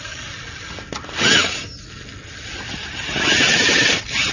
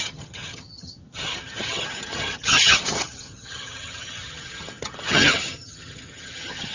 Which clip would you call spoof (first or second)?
second